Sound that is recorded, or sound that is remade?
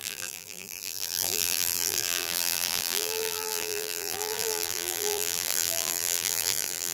remade